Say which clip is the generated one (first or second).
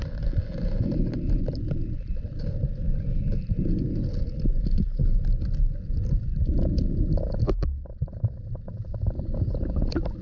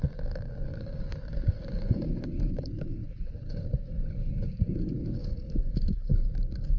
second